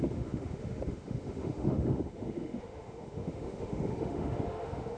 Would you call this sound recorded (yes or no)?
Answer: no